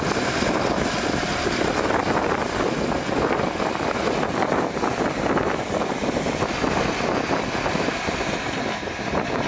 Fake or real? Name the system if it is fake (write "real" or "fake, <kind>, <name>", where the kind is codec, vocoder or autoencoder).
real